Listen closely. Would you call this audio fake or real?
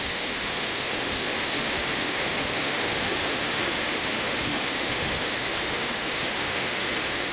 fake